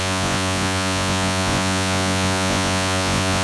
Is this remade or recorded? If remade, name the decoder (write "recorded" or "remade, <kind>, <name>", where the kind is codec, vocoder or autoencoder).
remade, vocoder, Vocos